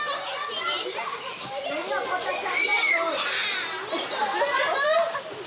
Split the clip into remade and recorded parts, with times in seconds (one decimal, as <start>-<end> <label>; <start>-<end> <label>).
0.0-5.5 recorded